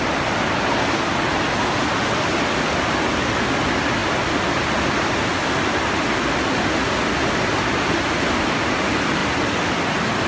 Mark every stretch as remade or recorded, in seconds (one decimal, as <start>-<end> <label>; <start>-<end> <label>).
0.0-10.3 recorded